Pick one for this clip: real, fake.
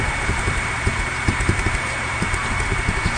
fake